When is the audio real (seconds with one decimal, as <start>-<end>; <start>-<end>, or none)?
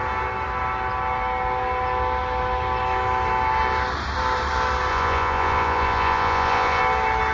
0.0-4.9; 6.8-7.3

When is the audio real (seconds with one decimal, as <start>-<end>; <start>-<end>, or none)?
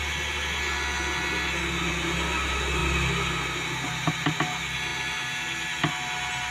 0.0-6.5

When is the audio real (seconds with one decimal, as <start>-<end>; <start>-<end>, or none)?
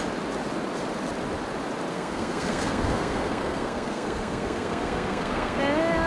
0.0-1.9; 5.6-6.1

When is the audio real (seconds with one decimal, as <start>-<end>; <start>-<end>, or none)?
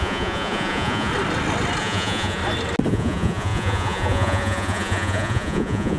1.1-1.8; 2.4-2.9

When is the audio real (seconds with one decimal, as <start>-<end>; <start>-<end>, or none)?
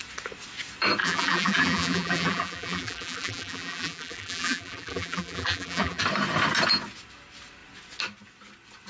0.0-1.0; 6.0-8.9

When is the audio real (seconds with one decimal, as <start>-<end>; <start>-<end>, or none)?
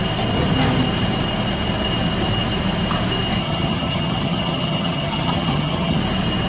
0.0-3.4; 6.0-6.5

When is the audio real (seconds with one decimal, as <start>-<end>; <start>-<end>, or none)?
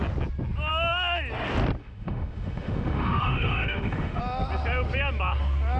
0.0-1.8; 4.2-5.8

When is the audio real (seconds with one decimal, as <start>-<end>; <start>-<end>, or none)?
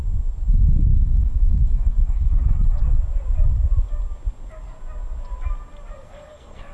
0.0-0.6; 2.5-5.9